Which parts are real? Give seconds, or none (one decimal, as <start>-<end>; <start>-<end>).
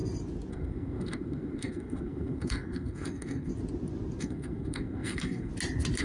0.0-0.5; 3.5-4.2; 5.5-6.0